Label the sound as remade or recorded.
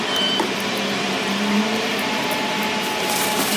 remade